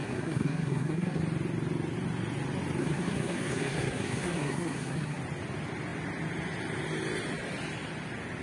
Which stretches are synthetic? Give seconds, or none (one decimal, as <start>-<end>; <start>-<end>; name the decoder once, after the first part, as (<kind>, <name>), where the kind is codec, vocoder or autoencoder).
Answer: 0.0-1.2 (codec, SNAC); 2.8-5.2